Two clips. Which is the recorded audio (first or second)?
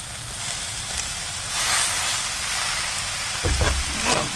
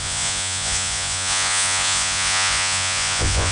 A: first